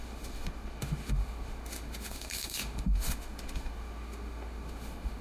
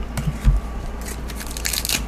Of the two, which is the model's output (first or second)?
first